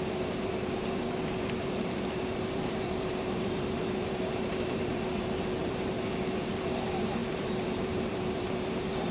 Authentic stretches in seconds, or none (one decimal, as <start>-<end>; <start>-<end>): none